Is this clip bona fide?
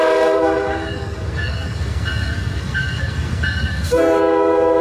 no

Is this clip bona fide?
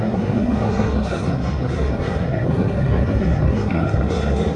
no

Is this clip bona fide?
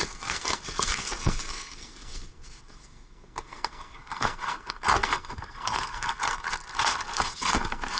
no